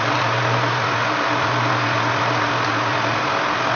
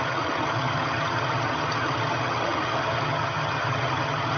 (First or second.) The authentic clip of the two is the first